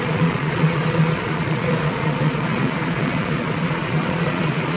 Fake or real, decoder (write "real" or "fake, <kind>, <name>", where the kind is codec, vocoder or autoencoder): fake, vocoder, Vocos